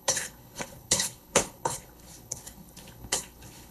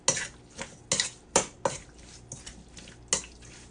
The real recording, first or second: second